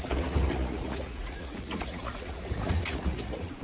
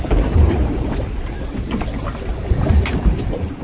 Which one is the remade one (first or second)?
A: first